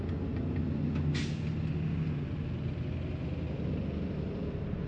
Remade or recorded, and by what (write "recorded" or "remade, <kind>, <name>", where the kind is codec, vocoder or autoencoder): recorded